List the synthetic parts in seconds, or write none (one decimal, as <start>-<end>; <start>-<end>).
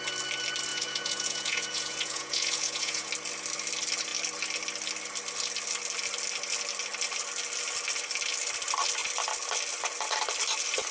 0.7-3.1